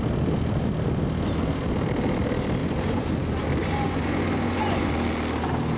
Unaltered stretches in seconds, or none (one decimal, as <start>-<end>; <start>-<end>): 0.0-2.6; 3.1-3.6; 4.9-5.8